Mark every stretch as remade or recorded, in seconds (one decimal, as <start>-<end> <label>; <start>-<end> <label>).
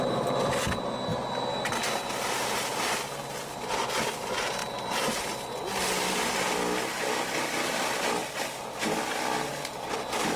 0.0-10.4 recorded